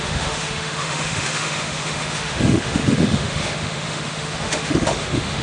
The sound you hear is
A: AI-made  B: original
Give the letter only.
A